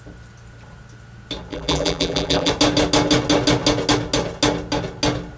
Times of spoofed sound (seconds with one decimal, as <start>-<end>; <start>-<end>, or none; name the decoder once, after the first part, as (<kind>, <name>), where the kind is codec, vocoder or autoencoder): 1.5-2.5 (vocoder, BigVGAN v2)

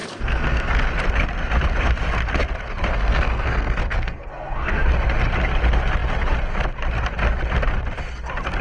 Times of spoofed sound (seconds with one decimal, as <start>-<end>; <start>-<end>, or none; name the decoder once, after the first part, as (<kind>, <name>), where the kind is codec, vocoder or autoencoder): 0.0-0.9 (codec, SNAC); 2.9-4.8